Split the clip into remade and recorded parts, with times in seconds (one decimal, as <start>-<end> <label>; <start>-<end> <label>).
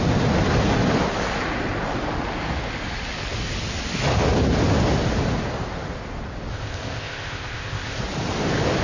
0.0-6.5 recorded; 6.5-8.0 remade; 8.0-8.8 recorded